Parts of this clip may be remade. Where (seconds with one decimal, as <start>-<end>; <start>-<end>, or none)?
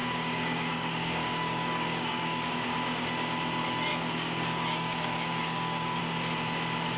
0.0-2.5; 3.9-6.0